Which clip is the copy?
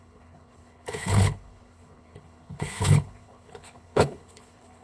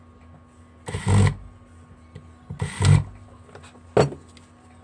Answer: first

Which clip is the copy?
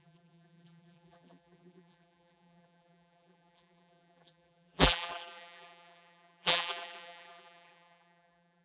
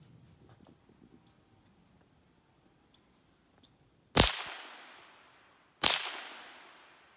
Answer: first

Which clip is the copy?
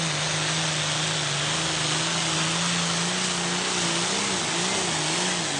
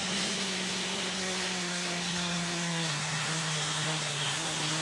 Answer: second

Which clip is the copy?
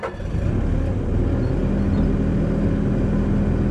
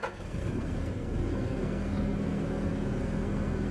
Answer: second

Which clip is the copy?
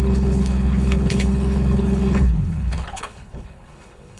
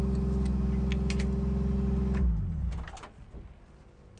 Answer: first